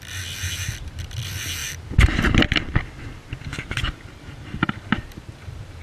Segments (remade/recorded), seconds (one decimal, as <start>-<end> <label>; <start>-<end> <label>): 0.0-3.5 recorded; 3.5-4.8 remade; 4.8-5.8 recorded

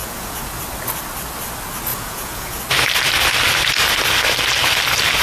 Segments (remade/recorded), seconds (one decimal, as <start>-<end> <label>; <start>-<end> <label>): 0.0-0.6 remade; 0.6-1.9 recorded; 1.9-2.6 remade; 2.6-5.2 recorded